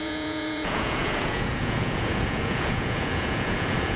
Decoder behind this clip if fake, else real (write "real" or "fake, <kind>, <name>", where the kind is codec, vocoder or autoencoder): fake, vocoder, Vocos